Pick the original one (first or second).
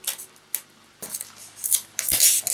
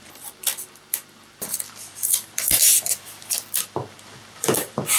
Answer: first